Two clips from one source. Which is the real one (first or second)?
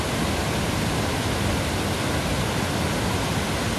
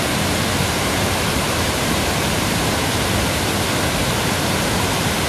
first